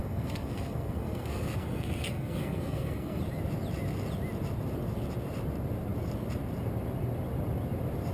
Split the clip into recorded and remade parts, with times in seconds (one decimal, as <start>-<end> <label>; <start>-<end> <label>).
0.0-3.2 remade; 3.2-8.1 recorded